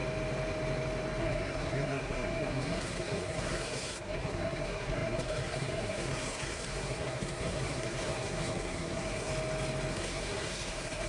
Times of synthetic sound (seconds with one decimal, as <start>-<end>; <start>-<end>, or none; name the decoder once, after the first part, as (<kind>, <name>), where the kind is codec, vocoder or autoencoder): 1.2-9.3 (codec, SNAC); 9.9-11.1